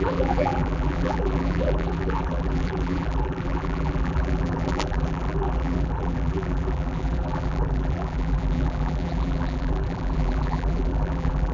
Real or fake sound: fake